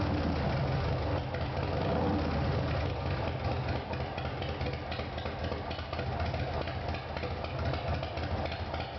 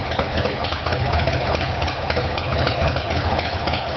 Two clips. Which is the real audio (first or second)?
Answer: first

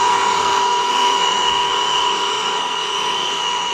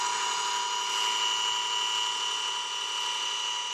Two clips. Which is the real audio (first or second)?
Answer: second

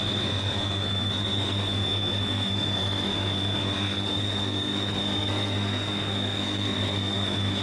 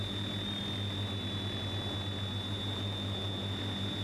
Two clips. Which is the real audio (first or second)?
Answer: second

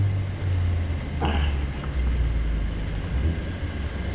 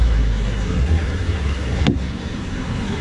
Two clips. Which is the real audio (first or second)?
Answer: first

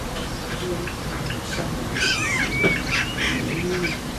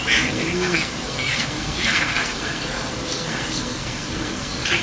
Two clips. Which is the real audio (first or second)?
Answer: first